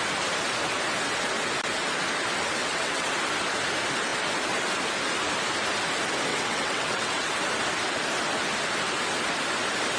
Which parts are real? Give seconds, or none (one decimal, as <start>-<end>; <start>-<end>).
0.0-2.6; 3.1-6.3; 7.3-10.0